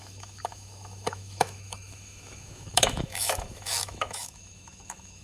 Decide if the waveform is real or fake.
fake